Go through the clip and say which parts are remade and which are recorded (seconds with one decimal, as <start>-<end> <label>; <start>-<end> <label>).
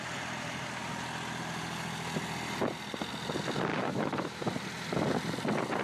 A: 0.0-3.7 recorded; 3.7-4.5 remade; 4.5-5.8 recorded